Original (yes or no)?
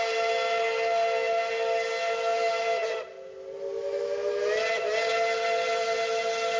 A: yes